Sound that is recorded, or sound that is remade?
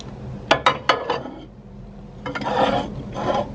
recorded